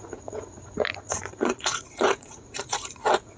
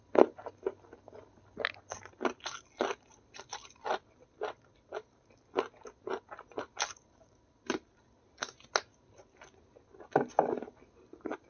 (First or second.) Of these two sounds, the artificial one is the first